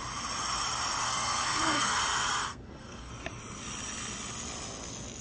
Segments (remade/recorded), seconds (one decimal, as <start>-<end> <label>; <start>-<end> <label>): 0.0-1.0 recorded; 1.0-2.0 remade; 2.0-2.4 recorded; 2.4-3.1 remade; 3.1-5.2 recorded